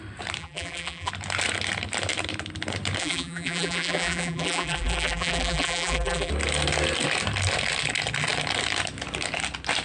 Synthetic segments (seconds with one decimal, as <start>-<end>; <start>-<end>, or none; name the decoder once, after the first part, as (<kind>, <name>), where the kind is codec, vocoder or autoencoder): 0.4-1.1 (vocoder, BigVGAN v2); 3.0-6.3